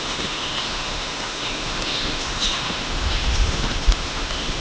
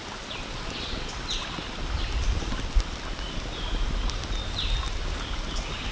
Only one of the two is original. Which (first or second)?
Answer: second